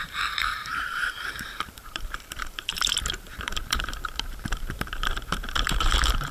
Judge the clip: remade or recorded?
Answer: remade